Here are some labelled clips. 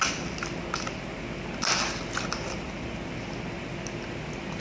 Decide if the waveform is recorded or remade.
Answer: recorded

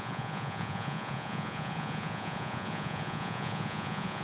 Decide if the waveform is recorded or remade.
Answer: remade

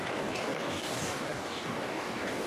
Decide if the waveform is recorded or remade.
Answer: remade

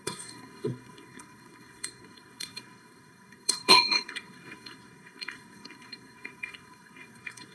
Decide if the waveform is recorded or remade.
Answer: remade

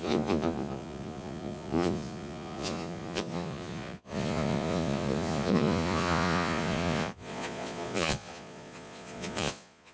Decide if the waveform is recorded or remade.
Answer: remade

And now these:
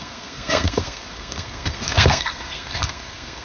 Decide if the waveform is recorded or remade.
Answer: remade